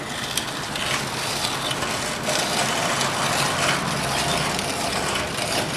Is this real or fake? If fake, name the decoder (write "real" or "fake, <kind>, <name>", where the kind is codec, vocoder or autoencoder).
real